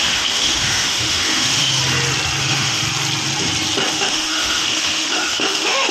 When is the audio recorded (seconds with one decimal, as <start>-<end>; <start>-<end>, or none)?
1.8-2.4; 2.8-3.9